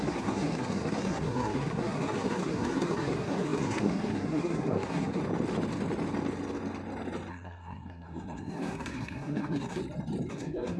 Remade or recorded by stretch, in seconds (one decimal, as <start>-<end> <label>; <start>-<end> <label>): 0.0-5.2 remade; 5.2-7.3 recorded; 7.3-9.8 remade; 9.8-10.3 recorded; 10.3-10.8 remade